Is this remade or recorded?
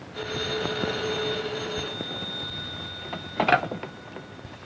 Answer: recorded